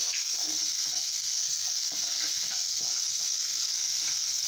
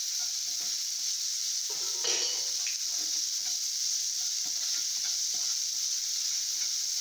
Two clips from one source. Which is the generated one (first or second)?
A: first